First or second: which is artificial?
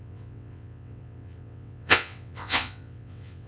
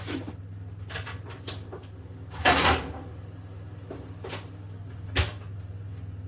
first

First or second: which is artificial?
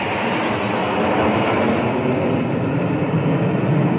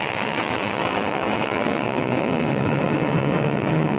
second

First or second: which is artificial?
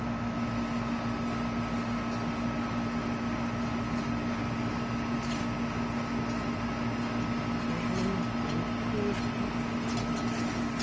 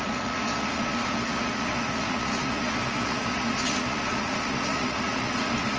second